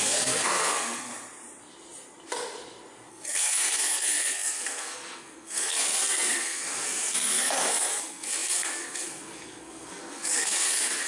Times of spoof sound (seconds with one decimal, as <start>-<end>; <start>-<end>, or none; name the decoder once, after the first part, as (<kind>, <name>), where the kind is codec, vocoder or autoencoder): 0.0-1.1 (codec, SNAC); 3.1-11.1